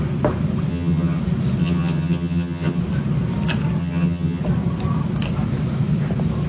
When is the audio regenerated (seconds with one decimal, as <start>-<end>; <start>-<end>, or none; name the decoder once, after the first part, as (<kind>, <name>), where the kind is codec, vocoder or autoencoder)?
0.7-1.2 (vocoder, HiFi-GAN); 1.6-2.8; 3.8-4.4